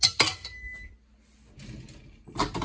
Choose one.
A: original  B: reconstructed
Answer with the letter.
A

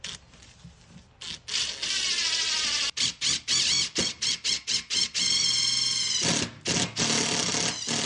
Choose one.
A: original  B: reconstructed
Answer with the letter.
A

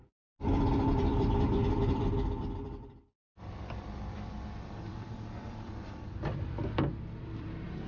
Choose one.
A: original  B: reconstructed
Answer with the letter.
B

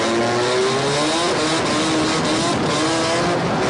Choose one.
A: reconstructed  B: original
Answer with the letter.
B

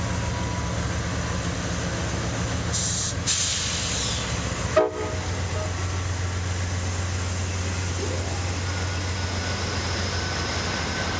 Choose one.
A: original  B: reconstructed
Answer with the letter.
A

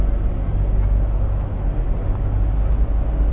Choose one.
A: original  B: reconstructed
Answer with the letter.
A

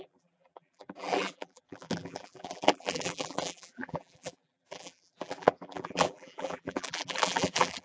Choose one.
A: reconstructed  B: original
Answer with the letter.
A